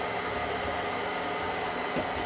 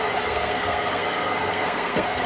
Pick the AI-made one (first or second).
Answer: second